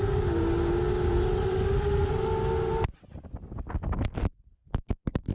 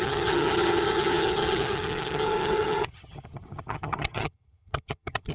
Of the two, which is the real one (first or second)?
first